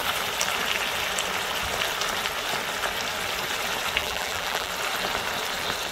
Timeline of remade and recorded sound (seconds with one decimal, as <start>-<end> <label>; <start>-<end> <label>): 0.0-4.0 recorded; 4.0-4.7 remade; 4.7-5.9 recorded

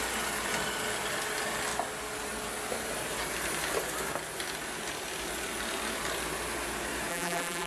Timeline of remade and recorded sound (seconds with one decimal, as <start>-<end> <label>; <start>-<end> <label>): 0.0-7.1 recorded; 7.1-7.7 remade

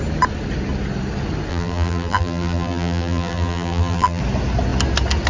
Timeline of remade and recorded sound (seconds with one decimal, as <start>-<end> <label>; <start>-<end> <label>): 0.0-1.5 recorded; 1.5-4.2 remade; 4.2-5.3 recorded

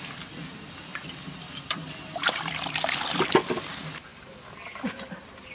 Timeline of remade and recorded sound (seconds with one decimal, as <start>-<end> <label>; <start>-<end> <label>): 0.0-0.9 recorded; 0.9-3.1 remade; 3.1-5.5 recorded